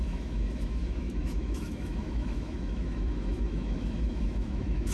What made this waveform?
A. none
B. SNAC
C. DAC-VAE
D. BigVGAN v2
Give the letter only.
C